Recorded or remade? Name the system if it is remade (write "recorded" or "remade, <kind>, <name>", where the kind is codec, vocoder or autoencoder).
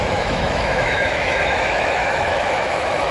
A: remade, autoencoder, DAC-VAE